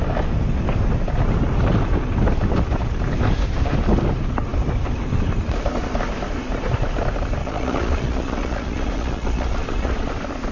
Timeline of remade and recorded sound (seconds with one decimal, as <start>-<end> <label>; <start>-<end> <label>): 0.0-7.4 recorded; 7.4-10.1 remade; 10.1-10.5 recorded